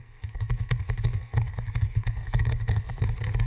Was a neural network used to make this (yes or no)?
yes